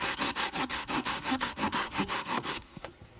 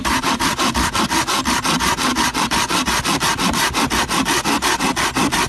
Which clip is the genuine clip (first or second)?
second